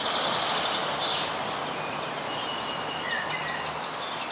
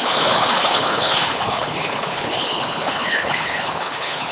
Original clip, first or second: first